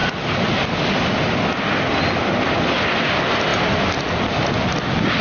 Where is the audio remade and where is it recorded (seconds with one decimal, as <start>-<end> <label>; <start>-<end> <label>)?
0.0-5.2 recorded